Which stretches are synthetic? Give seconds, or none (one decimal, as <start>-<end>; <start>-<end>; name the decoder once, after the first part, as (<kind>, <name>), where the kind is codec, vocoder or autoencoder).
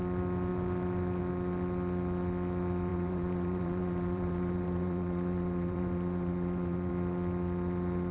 2.9-6.9 (vocoder, BigVGAN v2)